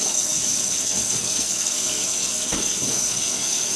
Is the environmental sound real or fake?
fake